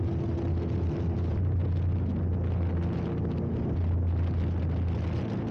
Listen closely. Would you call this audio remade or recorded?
recorded